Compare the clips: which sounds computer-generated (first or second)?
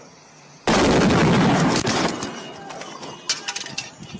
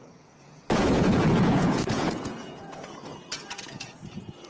second